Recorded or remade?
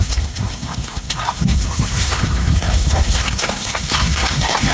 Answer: remade